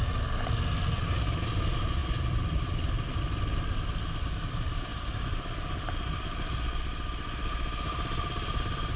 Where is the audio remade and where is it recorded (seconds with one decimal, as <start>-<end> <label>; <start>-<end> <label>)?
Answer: 0.0-2.0 recorded; 2.0-3.2 remade; 3.2-9.0 recorded